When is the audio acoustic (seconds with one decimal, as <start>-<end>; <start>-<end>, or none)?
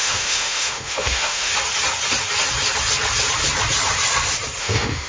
1.5-4.6